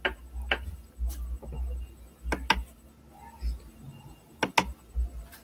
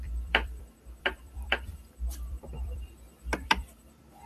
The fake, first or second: second